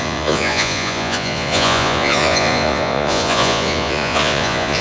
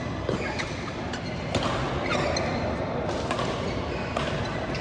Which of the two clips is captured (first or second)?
second